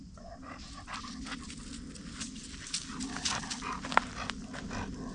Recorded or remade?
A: recorded